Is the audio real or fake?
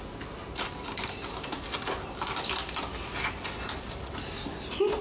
real